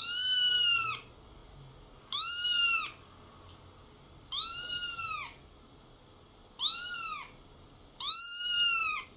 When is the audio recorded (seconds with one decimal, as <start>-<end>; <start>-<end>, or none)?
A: 0.0-9.2